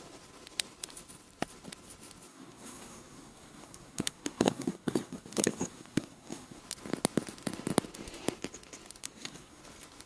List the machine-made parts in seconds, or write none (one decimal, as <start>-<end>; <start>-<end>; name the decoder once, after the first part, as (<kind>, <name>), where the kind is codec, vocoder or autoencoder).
2.3-6.6 (codec, SNAC); 9.0-9.6